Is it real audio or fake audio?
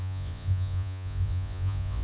fake